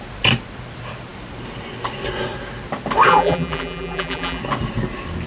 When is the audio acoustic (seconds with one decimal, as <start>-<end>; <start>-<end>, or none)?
0.0-3.1; 4.4-5.3